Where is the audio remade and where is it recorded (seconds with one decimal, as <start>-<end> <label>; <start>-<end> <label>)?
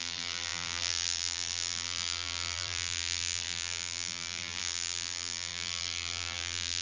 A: 0.0-6.8 remade